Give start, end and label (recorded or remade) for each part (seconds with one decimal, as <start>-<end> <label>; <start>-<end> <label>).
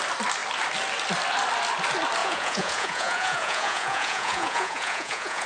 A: 0.0-2.2 recorded; 2.2-5.5 remade